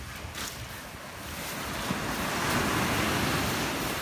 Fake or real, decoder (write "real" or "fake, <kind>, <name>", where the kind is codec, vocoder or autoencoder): real